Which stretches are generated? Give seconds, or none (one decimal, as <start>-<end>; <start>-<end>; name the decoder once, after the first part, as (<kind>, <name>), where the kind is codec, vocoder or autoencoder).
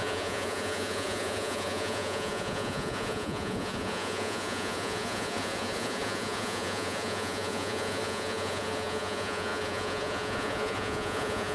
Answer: 0.0-11.5 (vocoder, Vocos)